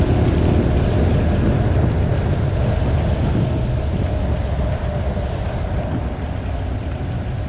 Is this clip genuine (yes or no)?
yes